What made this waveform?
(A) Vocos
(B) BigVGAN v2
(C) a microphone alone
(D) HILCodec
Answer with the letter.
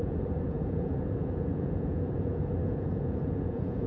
A